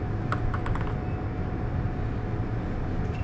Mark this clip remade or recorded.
recorded